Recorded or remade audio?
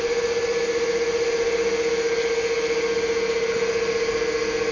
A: recorded